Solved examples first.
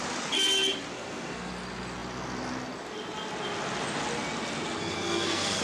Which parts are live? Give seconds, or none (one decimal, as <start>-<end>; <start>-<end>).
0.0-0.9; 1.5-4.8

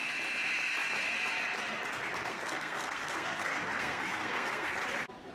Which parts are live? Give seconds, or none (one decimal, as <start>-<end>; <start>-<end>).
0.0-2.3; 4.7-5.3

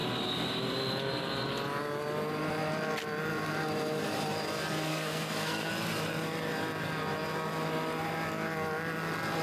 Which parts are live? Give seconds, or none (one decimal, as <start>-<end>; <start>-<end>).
0.0-4.9; 5.7-9.4